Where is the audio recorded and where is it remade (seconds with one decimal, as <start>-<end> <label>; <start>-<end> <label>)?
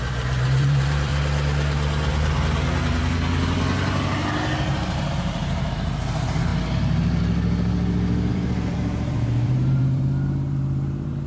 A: 0.0-1.1 remade; 1.1-5.1 recorded; 5.1-6.5 remade; 6.5-8.3 recorded; 8.3-11.3 remade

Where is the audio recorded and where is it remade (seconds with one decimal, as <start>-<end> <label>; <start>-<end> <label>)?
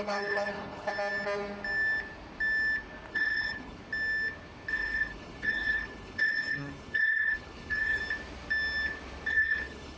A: 0.0-0.9 remade; 0.9-3.1 recorded; 3.1-3.8 remade; 3.8-4.7 recorded; 4.7-8.0 remade; 8.0-9.3 recorded; 9.3-10.0 remade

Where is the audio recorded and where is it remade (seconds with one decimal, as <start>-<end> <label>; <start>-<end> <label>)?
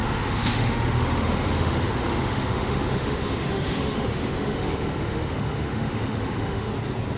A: 0.0-6.7 remade; 6.7-7.2 recorded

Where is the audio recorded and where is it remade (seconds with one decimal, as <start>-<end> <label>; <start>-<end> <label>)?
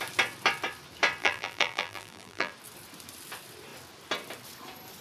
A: 0.0-1.2 recorded; 1.2-2.5 remade; 2.5-5.0 recorded